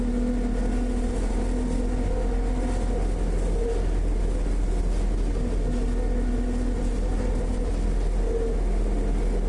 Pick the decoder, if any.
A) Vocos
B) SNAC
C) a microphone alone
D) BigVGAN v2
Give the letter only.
C